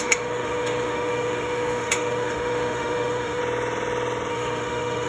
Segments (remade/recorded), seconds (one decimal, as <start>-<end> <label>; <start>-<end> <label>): 0.0-3.4 remade; 3.4-4.3 recorded; 4.3-5.1 remade